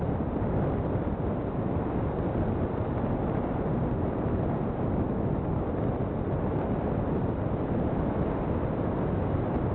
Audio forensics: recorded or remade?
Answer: recorded